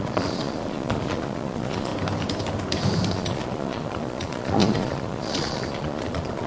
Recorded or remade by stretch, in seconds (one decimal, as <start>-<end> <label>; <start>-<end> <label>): 0.0-1.9 remade; 1.9-3.1 recorded; 3.1-6.5 remade